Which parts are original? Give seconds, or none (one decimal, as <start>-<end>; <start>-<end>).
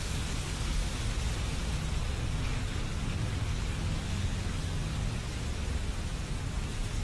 0.8-2.0; 5.0-6.3